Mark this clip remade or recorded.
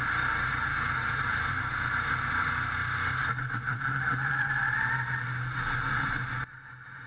recorded